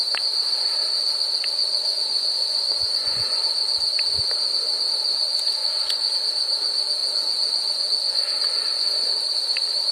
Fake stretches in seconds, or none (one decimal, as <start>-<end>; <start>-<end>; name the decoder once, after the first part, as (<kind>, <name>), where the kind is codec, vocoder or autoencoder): 1.6-3.4 (vocoder, Vocos); 5.6-6.1; 7.0-9.1